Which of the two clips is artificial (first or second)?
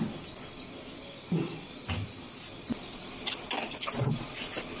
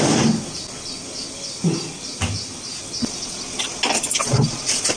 first